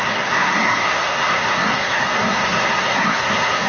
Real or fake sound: fake